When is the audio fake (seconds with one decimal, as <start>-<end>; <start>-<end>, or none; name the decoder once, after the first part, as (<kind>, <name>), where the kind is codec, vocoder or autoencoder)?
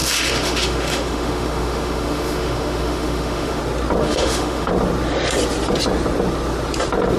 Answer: 0.0-3.6 (autoencoder, DAC-VAE); 4.0-4.7